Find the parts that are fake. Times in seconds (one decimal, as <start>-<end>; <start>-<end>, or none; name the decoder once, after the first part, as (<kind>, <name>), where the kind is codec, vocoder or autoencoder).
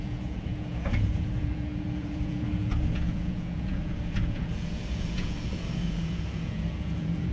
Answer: 0.0-7.3 (vocoder, Vocos)